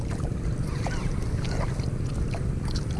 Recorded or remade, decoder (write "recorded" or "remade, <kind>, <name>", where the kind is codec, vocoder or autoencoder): recorded